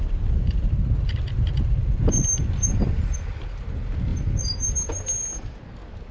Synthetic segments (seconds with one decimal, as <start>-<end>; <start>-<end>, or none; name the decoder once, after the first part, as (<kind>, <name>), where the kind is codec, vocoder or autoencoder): none